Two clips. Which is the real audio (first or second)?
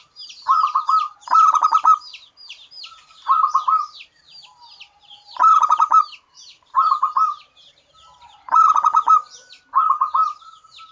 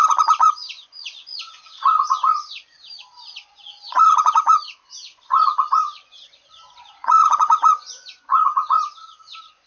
first